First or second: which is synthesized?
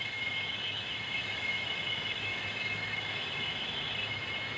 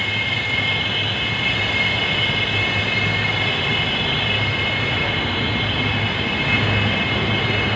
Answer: first